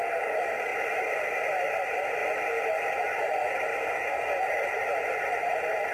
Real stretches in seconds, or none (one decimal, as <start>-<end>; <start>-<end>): 2.2-3.0; 3.7-5.1